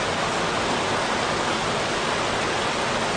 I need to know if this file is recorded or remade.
recorded